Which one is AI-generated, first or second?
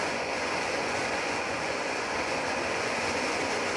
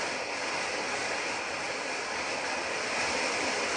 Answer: first